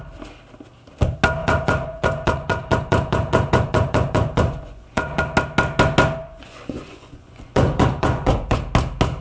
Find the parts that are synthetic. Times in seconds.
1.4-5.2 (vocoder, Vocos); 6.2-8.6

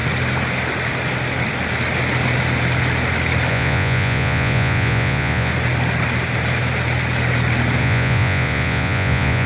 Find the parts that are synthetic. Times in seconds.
3.5-5.5 (vocoder, Vocos); 7.8-9.5

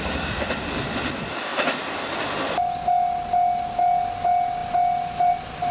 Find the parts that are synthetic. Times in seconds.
none